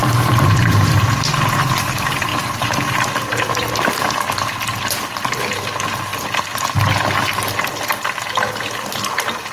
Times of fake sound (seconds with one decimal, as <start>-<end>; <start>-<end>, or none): 0.0-1.0; 2.3-3.1